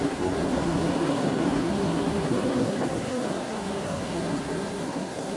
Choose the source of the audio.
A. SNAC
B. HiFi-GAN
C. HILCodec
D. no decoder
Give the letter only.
A